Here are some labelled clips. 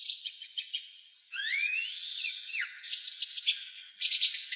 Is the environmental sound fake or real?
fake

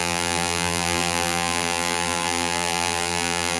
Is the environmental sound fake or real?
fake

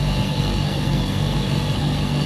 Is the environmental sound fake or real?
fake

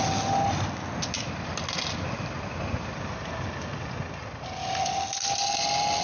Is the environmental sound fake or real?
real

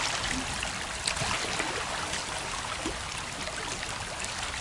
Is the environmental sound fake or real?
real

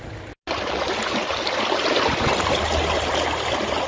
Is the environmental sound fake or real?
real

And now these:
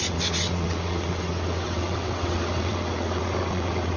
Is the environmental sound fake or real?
fake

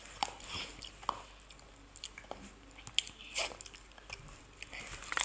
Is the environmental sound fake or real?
real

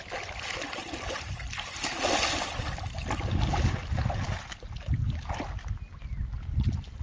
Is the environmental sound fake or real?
real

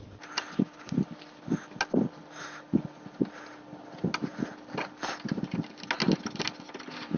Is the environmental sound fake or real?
real